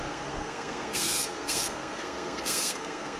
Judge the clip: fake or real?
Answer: fake